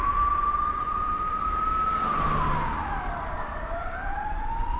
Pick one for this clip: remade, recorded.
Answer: recorded